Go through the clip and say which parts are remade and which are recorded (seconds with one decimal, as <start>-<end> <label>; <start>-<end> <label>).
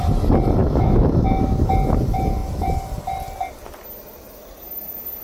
0.0-0.6 recorded; 0.6-1.7 remade; 1.7-5.2 recorded